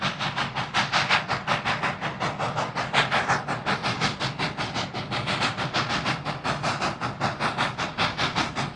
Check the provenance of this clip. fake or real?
real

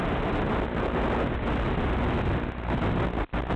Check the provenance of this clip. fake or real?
real